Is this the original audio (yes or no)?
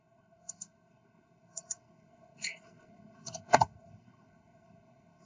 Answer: no